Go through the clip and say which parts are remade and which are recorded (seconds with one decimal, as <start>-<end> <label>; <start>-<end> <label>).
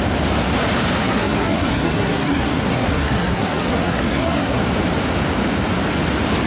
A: 0.0-1.0 recorded; 1.0-4.6 remade; 4.6-6.5 recorded